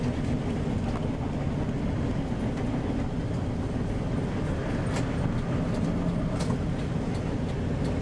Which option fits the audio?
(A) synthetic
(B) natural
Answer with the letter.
B